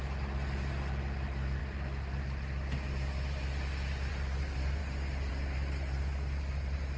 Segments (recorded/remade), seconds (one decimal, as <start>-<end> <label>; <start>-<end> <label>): 0.0-7.0 recorded